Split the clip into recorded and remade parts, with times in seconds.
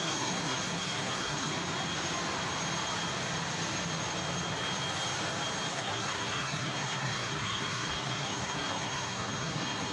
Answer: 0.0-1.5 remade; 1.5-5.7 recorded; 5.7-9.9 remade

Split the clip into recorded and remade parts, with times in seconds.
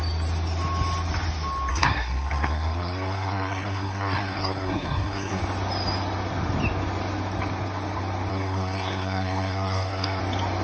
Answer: 0.0-1.7 recorded; 1.7-5.4 remade; 5.4-8.3 recorded; 8.3-10.2 remade; 10.2-10.6 recorded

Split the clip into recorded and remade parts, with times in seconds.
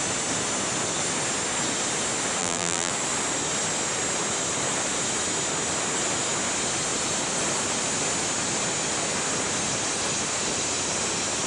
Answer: 0.0-2.4 recorded; 2.4-2.9 remade; 2.9-11.5 recorded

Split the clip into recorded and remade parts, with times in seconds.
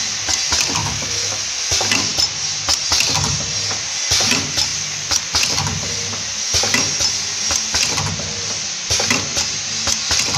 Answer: 0.0-0.8 recorded; 0.8-1.4 remade; 1.4-10.4 recorded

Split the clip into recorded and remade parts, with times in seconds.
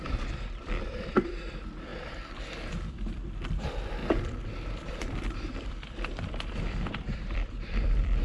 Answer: 0.0-1.9 remade; 1.9-2.9 recorded; 2.9-4.0 remade; 4.0-4.9 recorded; 4.9-8.2 remade